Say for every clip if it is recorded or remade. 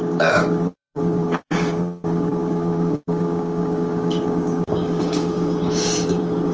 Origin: remade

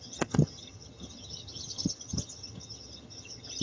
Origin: remade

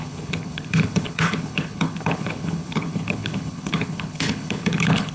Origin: remade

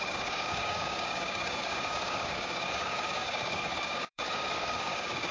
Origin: remade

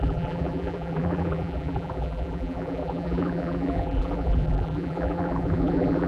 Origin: remade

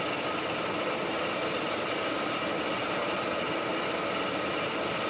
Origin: recorded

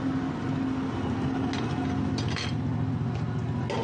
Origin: recorded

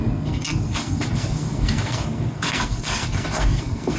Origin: remade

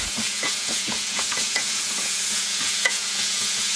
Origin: remade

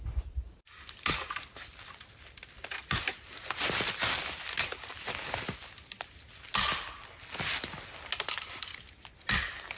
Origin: recorded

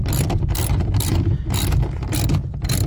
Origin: recorded